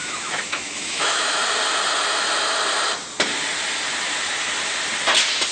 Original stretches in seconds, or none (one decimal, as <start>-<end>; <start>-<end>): 1.4-5.5

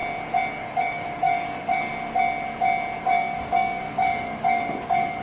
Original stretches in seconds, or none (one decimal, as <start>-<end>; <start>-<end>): 0.0-0.5; 1.9-3.0

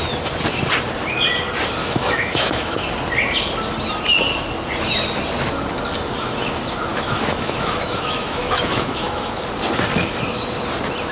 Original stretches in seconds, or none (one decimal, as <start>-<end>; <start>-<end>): 0.0-1.8; 2.8-6.9; 9.4-11.1

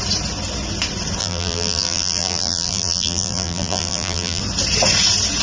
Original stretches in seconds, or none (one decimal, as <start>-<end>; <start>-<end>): 0.0-1.2; 4.4-5.4